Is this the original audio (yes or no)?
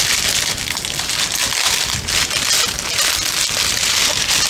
yes